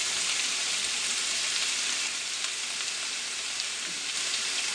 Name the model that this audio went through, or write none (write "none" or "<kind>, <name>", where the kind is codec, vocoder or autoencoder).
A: none